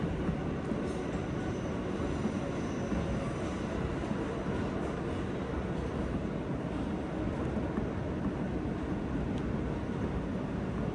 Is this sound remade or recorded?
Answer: recorded